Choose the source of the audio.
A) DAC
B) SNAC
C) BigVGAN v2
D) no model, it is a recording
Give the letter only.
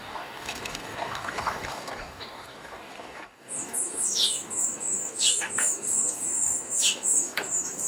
A